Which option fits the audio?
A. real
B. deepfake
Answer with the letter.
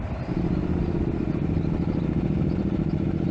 A